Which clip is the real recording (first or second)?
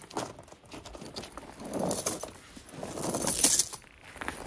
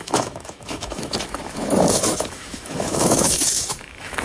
first